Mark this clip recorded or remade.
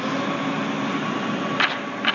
recorded